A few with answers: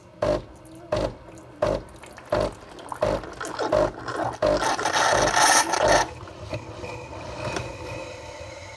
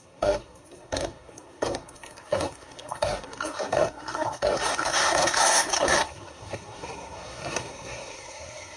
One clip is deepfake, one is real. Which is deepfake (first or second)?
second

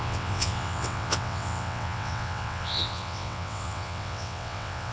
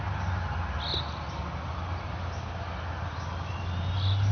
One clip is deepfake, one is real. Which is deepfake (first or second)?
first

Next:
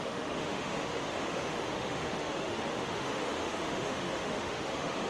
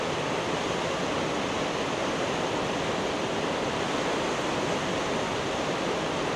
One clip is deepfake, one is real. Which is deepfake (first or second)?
first